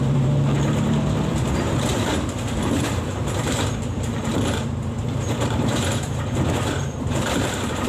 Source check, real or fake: fake